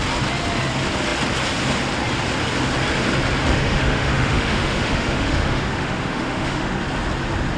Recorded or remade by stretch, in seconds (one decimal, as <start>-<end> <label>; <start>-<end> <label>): 0.0-3.4 recorded; 3.4-6.7 remade; 6.7-7.6 recorded